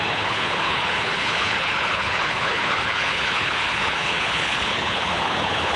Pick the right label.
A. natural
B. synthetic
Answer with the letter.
B